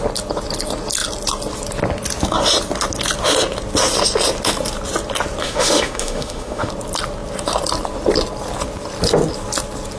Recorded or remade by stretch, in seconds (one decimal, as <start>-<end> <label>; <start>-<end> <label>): 0.0-5.4 recorded; 5.4-6.7 remade; 6.7-10.0 recorded